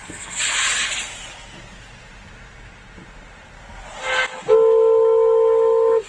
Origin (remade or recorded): recorded